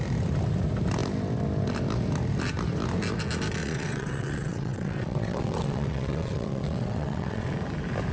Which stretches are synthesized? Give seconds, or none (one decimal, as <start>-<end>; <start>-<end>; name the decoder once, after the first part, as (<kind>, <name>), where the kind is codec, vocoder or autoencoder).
3.6-7.5 (vocoder, WaveNeXt)